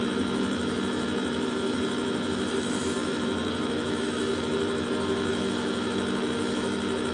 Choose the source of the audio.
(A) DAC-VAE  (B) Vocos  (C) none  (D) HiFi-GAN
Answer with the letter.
A